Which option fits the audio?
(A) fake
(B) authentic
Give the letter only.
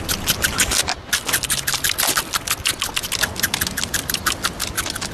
B